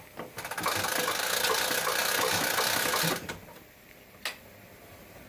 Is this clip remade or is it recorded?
recorded